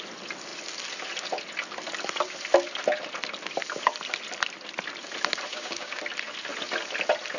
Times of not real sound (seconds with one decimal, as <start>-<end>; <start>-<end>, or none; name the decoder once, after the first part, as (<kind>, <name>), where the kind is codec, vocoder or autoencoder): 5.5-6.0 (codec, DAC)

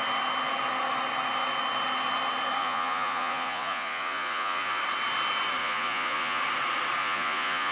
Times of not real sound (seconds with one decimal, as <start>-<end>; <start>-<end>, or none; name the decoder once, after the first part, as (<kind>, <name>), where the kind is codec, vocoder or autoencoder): 2.6-4.8 (vocoder, Vocos); 5.6-6.4; 7.0-7.7

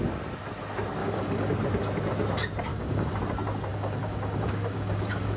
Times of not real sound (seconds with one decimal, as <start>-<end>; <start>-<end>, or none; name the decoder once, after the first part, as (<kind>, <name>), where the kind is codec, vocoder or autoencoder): 1.0-1.5 (codec, DAC); 2.7-3.2; 3.7-5.4

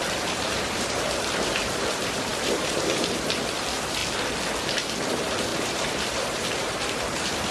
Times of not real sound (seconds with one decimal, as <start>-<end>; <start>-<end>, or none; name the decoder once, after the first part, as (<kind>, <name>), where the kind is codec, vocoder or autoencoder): 0.0-4.0 (vocoder, BigVGAN v2); 4.6-7.5